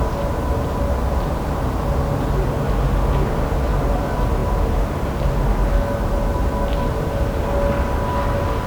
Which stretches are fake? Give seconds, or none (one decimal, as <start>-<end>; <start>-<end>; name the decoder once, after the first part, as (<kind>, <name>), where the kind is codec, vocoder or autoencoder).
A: 1.0-2.3 (vocoder, BigVGAN v2)